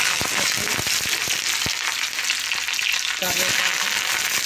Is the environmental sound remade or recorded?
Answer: recorded